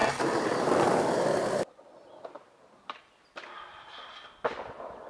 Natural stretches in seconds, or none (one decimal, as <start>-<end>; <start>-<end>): 0.0-5.1

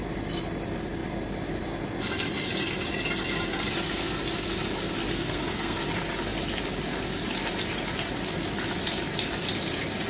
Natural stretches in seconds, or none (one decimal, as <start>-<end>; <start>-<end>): 0.0-5.1; 5.8-10.1

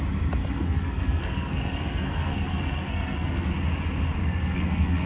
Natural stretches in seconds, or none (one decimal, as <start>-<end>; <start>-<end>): 0.0-0.4; 3.5-4.2

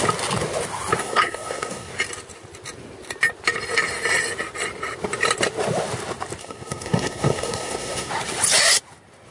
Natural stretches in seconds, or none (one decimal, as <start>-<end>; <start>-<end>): 0.0-1.0; 1.9-6.4; 8.1-9.3

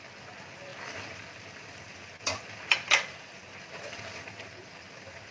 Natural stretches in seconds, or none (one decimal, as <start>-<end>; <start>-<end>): 0.0-5.3

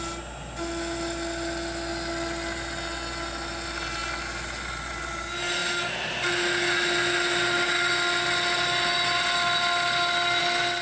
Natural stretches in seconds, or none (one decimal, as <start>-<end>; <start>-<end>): 0.0-10.8

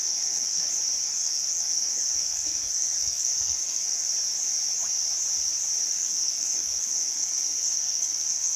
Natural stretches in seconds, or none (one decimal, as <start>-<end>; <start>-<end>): 0.6-1.0; 4.1-5.9

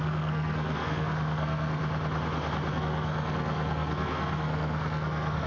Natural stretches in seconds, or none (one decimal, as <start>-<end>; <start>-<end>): 1.8-2.7